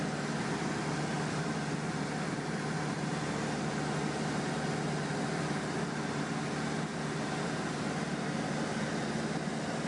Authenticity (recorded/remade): recorded